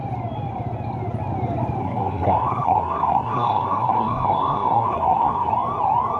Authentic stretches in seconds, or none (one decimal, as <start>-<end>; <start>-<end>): 0.0-1.8; 5.5-6.2

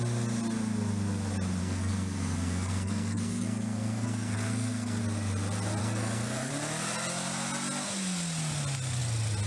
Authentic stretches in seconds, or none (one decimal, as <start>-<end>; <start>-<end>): 0.0-1.6; 5.0-5.8; 6.5-9.5

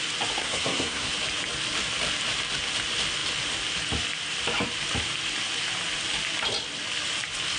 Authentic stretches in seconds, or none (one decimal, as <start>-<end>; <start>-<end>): 0.0-0.4; 1.1-7.6

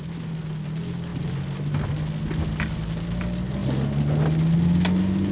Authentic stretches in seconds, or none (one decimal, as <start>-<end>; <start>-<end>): 0.0-5.3

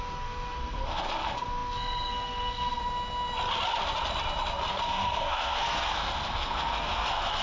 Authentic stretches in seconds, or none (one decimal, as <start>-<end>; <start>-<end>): 2.8-4.7

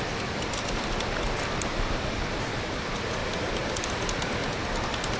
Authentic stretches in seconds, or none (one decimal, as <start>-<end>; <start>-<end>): 0.0-5.2